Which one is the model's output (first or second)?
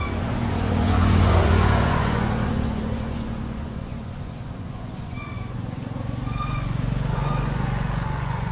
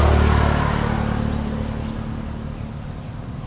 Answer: first